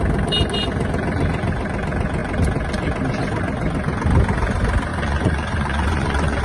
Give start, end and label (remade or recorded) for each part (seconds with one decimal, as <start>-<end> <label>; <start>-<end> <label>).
0.0-4.9 recorded; 4.9-6.4 remade